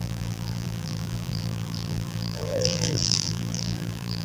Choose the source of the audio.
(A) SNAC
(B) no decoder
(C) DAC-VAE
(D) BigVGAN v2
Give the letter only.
D